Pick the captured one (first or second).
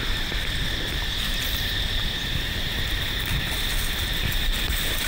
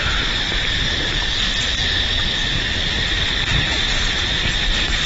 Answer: second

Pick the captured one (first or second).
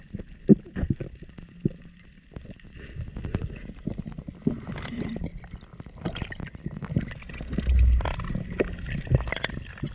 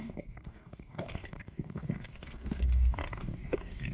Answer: first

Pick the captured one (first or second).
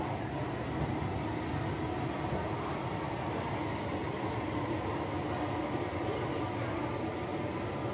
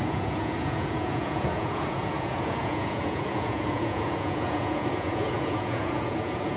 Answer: first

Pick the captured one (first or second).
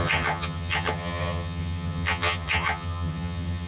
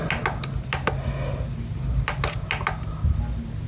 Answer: second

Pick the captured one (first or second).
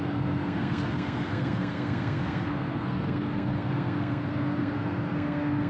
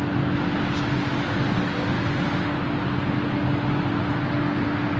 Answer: second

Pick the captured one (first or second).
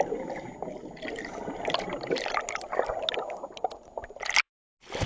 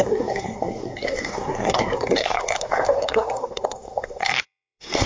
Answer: first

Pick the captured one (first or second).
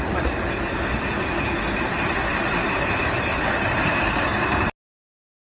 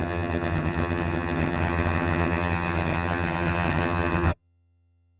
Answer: first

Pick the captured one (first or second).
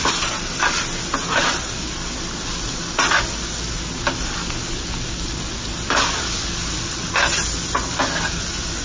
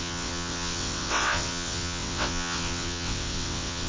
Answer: first